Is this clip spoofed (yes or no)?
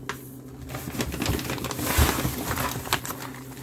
no